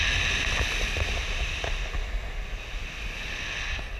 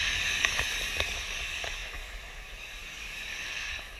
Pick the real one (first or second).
first